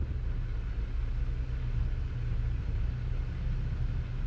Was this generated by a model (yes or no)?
no